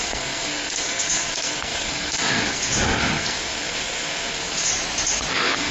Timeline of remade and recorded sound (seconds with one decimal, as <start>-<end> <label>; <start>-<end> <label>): 0.0-4.7 remade; 4.7-5.3 recorded; 5.3-5.7 remade